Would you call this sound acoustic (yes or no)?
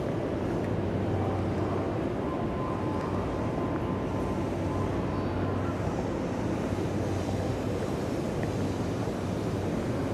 yes